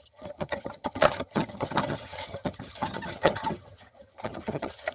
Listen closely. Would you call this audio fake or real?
fake